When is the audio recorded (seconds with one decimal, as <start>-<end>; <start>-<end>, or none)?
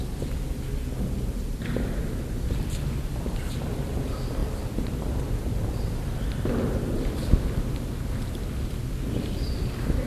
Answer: 0.0-10.1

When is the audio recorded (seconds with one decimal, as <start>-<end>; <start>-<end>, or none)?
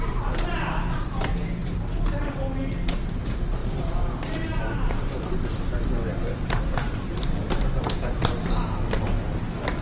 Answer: 0.0-3.6; 8.5-9.8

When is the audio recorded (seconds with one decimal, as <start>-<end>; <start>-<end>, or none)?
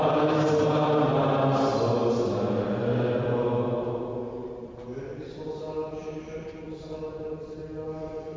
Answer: 0.0-4.4; 7.6-8.4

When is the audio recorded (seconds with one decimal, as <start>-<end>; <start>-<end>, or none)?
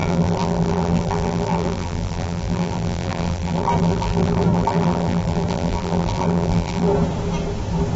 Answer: 6.9-8.0